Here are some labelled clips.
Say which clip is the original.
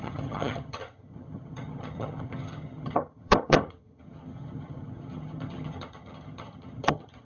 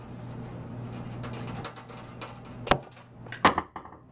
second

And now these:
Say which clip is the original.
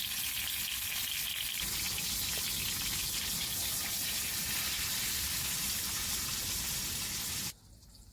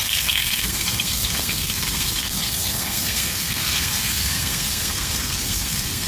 first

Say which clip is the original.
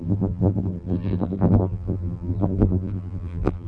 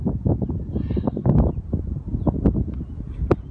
second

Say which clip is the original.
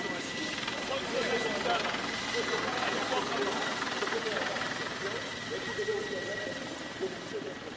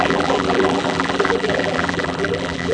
first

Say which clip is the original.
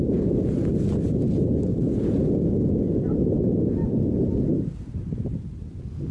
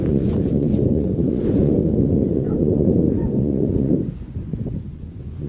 first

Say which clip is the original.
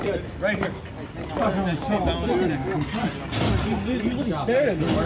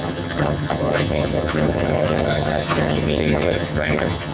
first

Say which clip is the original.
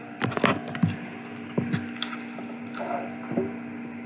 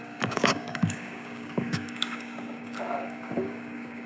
first